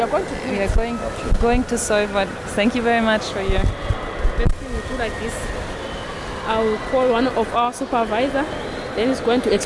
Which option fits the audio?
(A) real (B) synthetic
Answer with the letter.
A